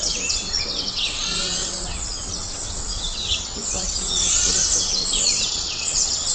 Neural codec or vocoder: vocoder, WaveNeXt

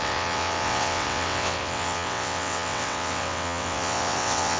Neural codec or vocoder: vocoder, WaveNeXt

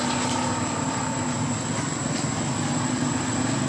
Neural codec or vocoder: none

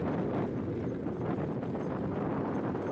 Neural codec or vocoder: none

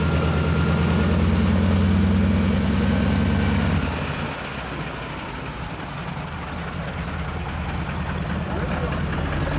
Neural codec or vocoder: none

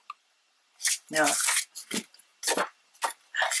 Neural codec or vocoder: none